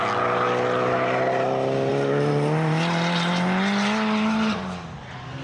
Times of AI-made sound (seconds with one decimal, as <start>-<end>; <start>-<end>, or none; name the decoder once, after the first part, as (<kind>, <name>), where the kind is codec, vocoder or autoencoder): 1.9-3.3 (vocoder, BigVGAN v2)